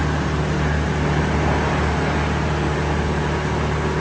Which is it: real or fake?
real